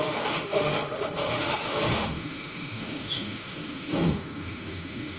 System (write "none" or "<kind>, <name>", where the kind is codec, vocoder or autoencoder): autoencoder, DAC-VAE